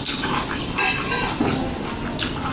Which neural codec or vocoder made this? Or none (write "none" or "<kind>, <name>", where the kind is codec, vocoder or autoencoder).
none